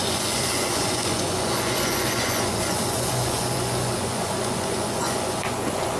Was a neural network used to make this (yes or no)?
yes